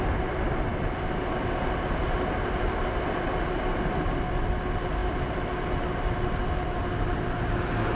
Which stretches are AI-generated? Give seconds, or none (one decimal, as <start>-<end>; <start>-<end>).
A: none